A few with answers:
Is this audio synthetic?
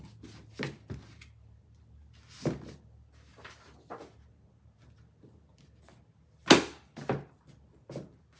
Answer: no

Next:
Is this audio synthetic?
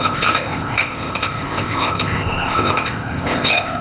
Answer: yes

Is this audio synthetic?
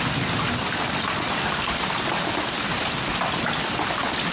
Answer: no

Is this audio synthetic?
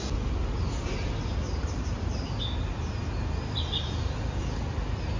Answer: no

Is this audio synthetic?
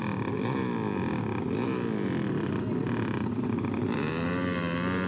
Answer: no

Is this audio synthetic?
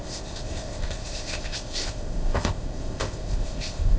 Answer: yes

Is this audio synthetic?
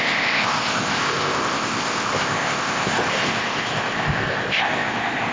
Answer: yes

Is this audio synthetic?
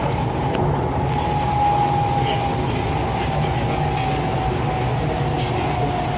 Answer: no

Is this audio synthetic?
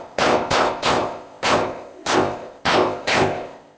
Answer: yes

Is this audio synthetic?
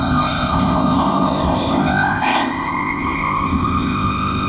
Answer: yes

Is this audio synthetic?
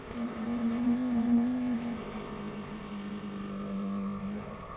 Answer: yes